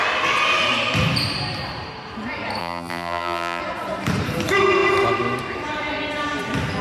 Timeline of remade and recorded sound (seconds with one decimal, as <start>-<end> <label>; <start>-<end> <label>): 0.0-2.6 recorded; 2.6-3.6 remade; 3.6-6.8 recorded